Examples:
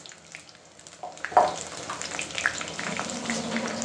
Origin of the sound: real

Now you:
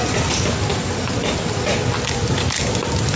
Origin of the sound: real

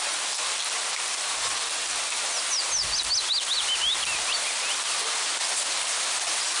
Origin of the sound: real